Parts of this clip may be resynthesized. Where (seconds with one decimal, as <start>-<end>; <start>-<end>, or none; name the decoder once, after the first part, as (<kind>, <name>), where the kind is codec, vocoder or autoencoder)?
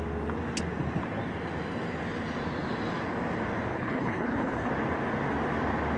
3.7-4.7 (codec, HILCodec)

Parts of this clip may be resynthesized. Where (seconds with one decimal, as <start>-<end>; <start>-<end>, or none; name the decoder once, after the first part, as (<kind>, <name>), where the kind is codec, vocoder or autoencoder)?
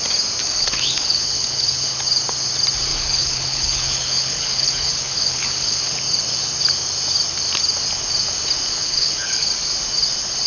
0.4-2.0 (codec, HILCodec); 2.9-5.9; 8.8-9.5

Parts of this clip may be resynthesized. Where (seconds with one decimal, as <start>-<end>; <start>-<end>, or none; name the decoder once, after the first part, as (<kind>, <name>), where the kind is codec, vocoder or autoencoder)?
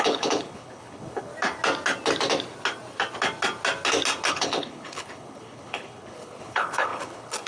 0.0-1.3 (codec, HILCodec); 4.3-7.5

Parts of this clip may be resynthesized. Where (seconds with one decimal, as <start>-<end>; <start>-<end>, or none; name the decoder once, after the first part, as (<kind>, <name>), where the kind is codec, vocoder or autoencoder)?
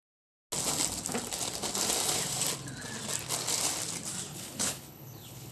4.3-5.5 (codec, HILCodec)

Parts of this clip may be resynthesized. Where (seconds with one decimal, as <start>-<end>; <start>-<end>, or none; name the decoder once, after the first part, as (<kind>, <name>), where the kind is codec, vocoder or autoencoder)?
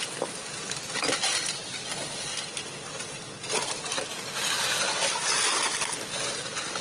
none